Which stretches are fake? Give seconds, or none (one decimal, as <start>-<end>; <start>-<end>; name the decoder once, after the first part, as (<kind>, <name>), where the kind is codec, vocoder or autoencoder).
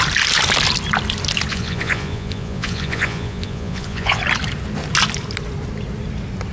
1.5-4.2 (vocoder, Vocos)